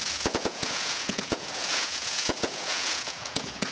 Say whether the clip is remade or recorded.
remade